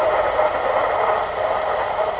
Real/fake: real